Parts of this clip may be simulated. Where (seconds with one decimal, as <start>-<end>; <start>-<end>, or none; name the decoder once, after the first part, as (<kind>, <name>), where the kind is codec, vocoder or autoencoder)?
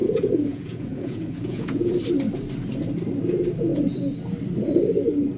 0.0-1.9 (vocoder, Vocos)